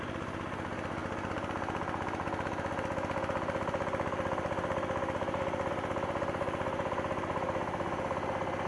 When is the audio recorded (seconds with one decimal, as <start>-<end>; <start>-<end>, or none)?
0.0-8.7